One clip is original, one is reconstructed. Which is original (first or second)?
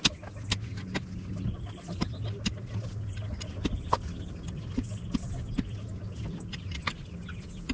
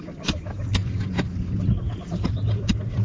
first